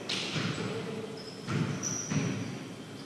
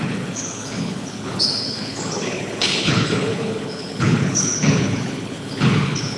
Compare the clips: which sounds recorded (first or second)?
first